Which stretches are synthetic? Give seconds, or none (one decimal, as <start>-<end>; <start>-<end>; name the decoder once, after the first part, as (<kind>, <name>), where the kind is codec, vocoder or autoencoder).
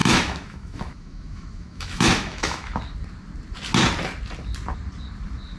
0.0-2.8 (autoencoder, DAC-VAE)